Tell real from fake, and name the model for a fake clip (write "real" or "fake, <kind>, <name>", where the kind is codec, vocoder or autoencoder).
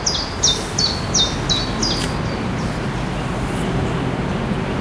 real